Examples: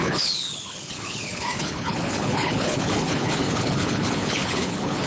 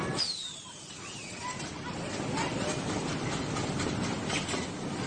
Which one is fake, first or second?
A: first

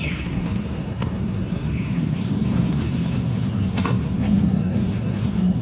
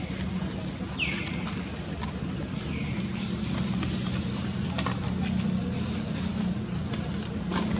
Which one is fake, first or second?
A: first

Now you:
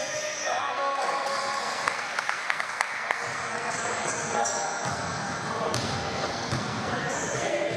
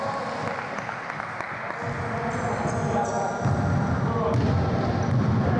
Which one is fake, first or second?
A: first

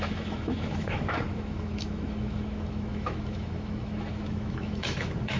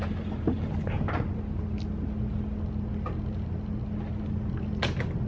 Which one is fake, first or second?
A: first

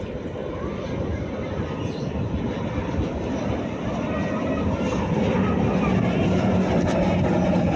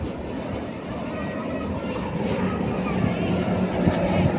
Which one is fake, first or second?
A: first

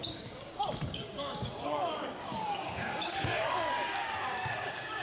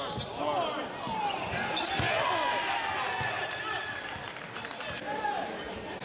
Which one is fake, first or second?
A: first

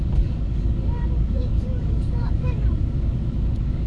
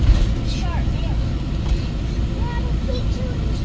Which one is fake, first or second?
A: first